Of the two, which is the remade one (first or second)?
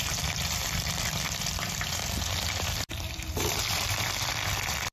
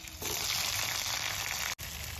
first